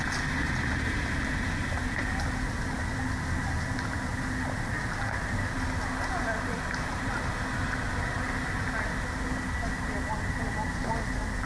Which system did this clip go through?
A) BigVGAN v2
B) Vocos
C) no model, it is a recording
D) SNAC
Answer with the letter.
C